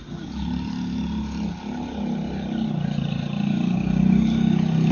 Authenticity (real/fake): real